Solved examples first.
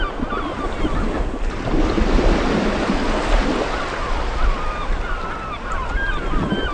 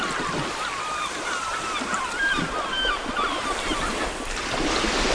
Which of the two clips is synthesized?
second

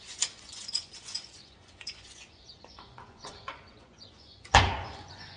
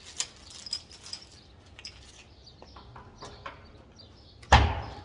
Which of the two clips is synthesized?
first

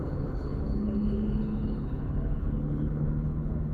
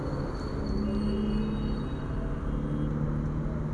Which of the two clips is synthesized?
first